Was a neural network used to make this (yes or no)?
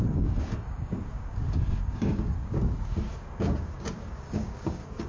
yes